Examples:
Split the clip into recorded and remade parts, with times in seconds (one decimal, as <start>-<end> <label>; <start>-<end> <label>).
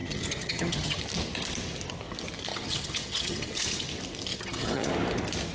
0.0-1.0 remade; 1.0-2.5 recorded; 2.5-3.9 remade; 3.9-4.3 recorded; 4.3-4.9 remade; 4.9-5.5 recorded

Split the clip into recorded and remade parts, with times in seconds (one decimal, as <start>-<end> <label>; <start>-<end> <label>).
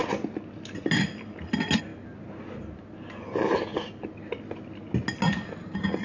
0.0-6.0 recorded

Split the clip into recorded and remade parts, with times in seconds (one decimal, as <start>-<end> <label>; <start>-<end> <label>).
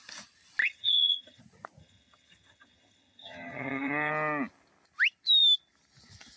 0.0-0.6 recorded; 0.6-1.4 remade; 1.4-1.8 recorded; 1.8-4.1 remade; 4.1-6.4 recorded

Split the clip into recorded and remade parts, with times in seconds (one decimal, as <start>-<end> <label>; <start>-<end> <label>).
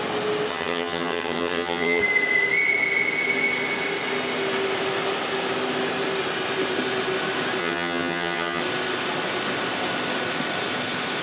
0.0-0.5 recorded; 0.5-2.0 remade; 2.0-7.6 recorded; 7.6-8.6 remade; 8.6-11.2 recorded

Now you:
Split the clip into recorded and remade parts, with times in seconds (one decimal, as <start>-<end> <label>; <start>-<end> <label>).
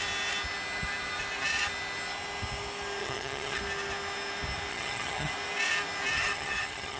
0.0-3.0 recorded; 3.0-3.6 remade; 3.6-4.7 recorded; 4.7-5.3 remade; 5.3-6.1 recorded; 6.1-7.0 remade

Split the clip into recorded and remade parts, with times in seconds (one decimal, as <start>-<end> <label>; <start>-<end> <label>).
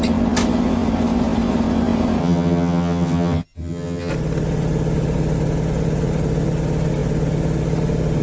0.0-2.2 recorded; 2.2-4.1 remade; 4.1-8.2 recorded